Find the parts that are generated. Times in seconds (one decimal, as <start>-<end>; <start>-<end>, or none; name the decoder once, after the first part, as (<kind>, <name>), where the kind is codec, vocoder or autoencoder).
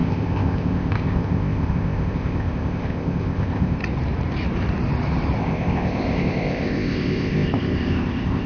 0.0-3.8 (codec, ZipCodec); 5.4-8.5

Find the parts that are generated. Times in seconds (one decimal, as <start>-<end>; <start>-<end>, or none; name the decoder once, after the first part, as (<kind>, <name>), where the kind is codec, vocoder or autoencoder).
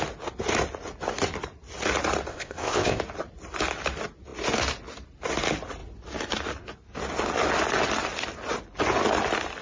2.3-3.0 (codec, ZipCodec)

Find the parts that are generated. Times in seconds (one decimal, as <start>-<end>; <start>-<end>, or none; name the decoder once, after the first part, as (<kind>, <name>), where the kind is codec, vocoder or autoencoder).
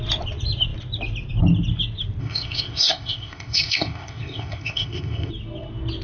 2.2-5.3 (codec, ZipCodec)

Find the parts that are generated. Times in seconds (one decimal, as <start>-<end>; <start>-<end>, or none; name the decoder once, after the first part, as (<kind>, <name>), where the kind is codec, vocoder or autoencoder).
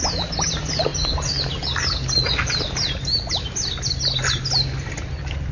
none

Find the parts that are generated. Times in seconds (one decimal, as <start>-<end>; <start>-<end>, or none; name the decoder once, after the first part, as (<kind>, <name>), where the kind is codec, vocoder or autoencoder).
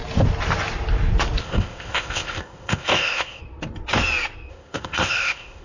1.4-3.4 (codec, ZipCodec); 4.5-5.6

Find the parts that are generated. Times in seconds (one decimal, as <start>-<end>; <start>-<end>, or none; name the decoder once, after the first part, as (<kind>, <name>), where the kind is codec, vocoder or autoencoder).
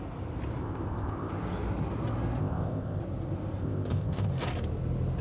0.6-1.3 (codec, ZipCodec); 2.4-3.0; 3.6-4.3